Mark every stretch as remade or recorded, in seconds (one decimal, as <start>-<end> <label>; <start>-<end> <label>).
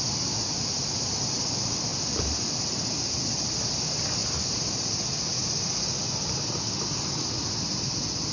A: 0.0-8.3 recorded